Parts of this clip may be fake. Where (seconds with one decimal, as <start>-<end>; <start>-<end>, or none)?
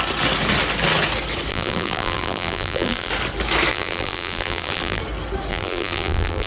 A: 1.5-3.1; 3.7-5.0; 5.5-6.5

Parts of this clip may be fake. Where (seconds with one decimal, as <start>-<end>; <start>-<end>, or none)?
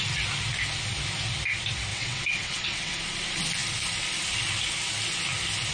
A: 1.9-3.0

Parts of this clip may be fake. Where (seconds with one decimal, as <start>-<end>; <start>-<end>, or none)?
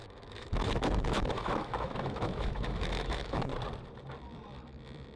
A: 0.0-3.5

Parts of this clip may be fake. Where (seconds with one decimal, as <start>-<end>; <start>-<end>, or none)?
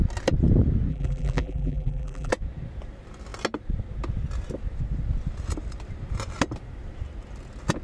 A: 0.9-2.3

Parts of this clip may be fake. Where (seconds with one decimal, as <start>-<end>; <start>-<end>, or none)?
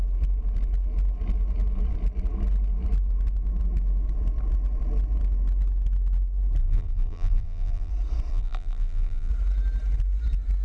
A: 6.6-7.9; 8.3-9.3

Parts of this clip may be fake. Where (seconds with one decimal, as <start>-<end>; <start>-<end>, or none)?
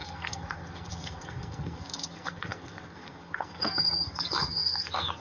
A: 0.0-5.2